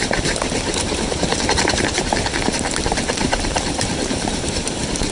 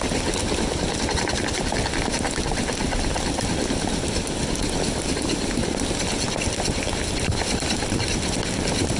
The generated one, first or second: first